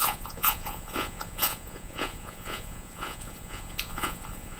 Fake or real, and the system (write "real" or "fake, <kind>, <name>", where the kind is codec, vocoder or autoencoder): fake, vocoder, Vocos